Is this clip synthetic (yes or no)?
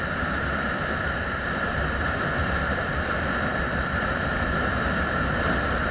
no